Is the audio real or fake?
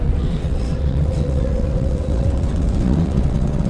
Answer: fake